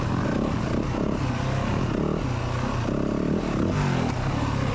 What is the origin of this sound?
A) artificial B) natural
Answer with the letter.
B